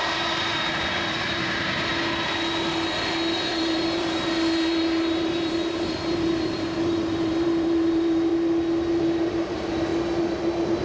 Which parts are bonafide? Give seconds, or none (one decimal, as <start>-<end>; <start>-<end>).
1.9-3.5; 8.3-9.0; 9.9-10.8